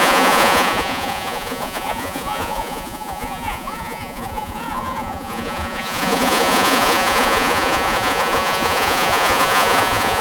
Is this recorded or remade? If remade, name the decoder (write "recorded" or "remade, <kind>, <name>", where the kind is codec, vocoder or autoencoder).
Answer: remade, vocoder, Vocos